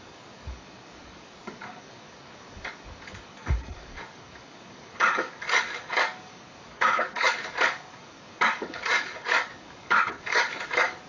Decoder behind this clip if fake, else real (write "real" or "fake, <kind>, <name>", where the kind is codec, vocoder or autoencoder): fake, codec, DAC